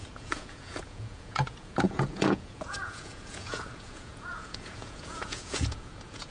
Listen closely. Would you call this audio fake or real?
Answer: fake